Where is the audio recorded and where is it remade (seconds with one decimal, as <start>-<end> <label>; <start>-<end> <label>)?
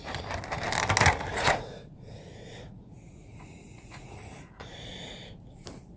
0.0-1.3 recorded; 1.3-4.9 remade; 4.9-6.0 recorded